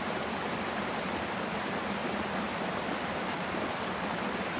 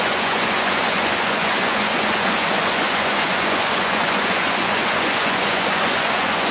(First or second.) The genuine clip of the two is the first